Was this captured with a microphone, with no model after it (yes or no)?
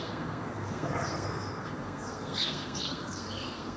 no